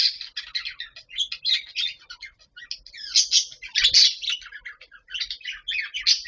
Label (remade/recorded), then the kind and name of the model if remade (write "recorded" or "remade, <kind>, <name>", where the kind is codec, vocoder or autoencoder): recorded